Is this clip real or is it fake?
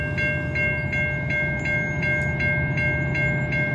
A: real